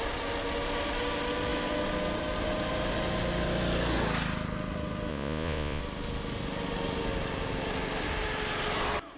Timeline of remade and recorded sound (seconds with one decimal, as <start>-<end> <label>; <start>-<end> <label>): 0.0-5.1 recorded; 5.1-5.8 remade; 5.8-9.2 recorded